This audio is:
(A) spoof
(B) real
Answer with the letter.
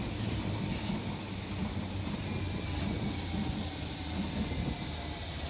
B